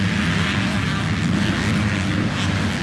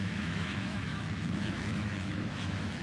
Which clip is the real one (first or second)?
first